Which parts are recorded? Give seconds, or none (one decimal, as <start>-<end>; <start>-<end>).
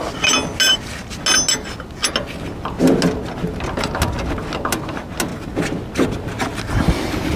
0.0-7.4